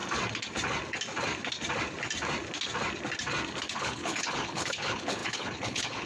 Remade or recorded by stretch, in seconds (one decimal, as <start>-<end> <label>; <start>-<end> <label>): 0.0-3.7 recorded; 3.7-6.1 remade